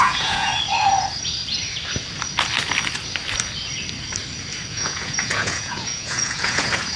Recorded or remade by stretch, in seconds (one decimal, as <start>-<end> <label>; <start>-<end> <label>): 0.0-0.5 remade; 0.5-4.7 recorded; 4.7-7.0 remade